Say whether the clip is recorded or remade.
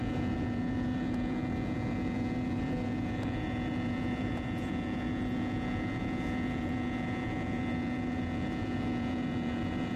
remade